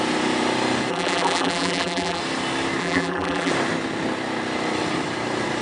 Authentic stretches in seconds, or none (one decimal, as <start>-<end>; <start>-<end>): 0.0-0.9; 2.2-2.8; 3.5-5.6